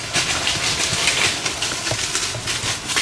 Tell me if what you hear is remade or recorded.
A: recorded